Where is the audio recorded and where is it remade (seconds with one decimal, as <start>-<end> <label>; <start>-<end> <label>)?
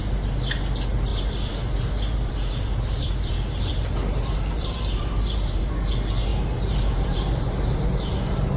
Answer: 0.0-1.1 recorded; 1.1-5.7 remade; 5.7-6.3 recorded; 6.3-8.6 remade